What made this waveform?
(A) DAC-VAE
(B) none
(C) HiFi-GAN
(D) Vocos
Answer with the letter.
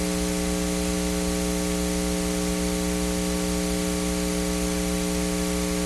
B